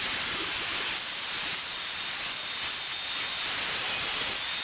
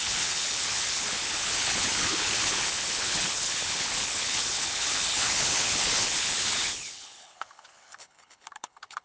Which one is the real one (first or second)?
first